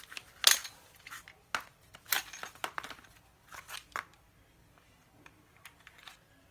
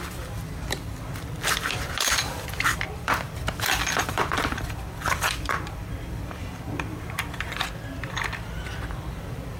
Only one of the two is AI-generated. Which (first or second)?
second